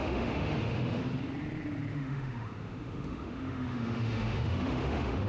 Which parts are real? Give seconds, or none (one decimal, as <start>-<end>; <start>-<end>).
1.0-1.9